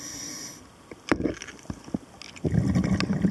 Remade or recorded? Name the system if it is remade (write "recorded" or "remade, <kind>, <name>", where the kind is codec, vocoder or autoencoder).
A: recorded